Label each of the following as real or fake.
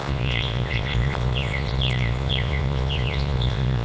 fake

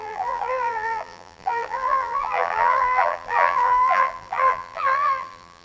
fake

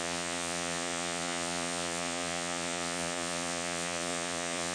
fake